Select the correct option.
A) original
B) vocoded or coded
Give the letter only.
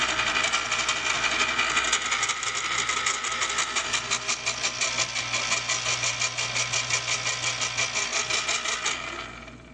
A